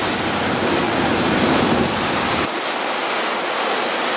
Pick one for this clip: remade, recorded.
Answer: recorded